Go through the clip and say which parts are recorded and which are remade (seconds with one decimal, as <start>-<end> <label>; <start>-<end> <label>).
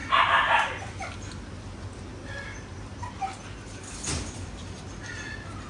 0.0-5.7 recorded